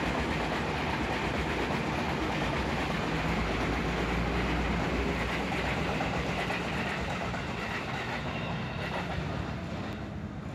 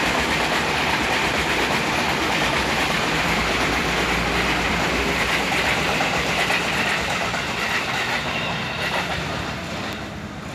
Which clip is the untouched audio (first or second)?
first